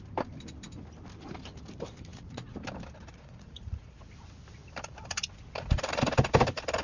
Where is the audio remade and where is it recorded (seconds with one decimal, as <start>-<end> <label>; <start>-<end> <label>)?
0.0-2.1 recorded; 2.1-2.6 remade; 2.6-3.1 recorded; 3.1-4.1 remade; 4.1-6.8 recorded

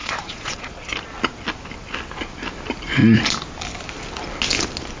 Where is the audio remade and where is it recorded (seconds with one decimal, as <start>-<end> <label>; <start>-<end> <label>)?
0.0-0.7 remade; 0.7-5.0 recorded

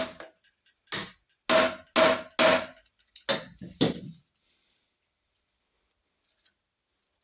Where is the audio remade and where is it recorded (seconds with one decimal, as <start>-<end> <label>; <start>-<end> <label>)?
0.0-7.2 recorded

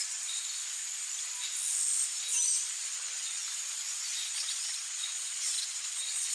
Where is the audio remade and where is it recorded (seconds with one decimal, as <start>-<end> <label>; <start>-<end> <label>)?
0.0-0.4 remade; 0.4-2.8 recorded; 2.8-3.4 remade; 3.4-4.3 recorded; 4.3-6.3 remade

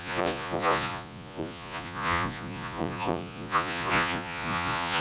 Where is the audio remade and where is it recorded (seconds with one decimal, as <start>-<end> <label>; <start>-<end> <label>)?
0.0-5.0 remade

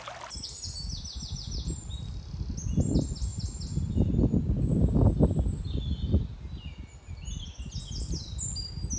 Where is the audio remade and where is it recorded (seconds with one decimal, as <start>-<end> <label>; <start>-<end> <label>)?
0.0-9.0 recorded

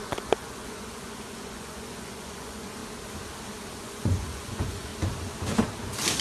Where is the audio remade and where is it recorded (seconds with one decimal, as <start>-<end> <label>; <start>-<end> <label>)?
0.0-2.8 remade; 2.8-3.8 recorded; 3.8-4.9 remade; 4.9-6.2 recorded

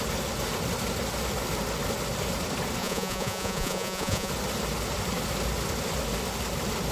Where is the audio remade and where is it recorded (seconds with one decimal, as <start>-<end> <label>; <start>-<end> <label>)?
0.0-2.8 recorded; 2.8-4.3 remade; 4.3-6.9 recorded